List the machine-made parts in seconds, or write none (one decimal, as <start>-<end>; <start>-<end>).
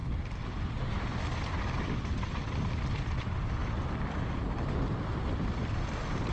0.0-3.2; 3.6-6.3